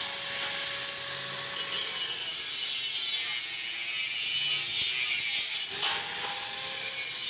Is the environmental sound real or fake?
real